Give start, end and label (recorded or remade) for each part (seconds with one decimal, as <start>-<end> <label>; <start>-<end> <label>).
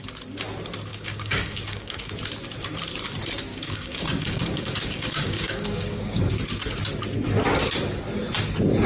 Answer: 0.0-0.9 recorded; 0.9-2.1 remade; 2.1-3.5 recorded; 3.5-6.3 remade; 6.3-8.9 recorded